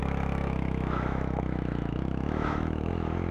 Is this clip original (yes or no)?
no